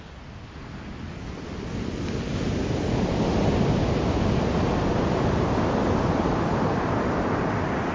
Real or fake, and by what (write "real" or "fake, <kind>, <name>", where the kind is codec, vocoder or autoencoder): real